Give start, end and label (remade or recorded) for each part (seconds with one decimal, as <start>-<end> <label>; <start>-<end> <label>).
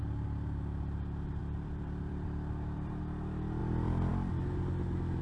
0.0-1.4 recorded; 1.4-3.0 remade; 3.0-3.6 recorded; 3.6-4.1 remade; 4.1-5.2 recorded